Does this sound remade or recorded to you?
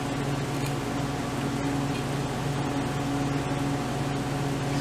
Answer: recorded